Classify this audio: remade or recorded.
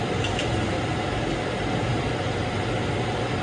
recorded